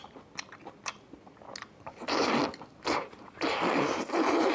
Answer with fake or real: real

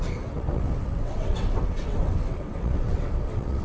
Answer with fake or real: fake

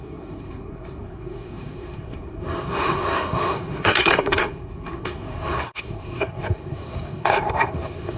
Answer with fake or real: fake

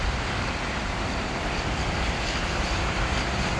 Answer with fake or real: fake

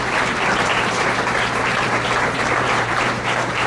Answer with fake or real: fake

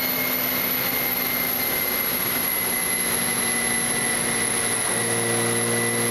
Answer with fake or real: real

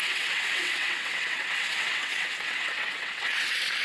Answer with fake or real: fake